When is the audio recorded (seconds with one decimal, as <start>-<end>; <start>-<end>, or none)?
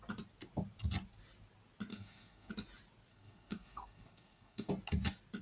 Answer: 0.0-1.9; 2.5-3.1; 4.7-5.4